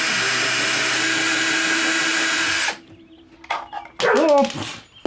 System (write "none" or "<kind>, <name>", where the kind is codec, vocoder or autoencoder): none